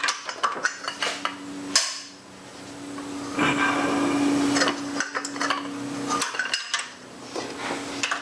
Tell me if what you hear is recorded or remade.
recorded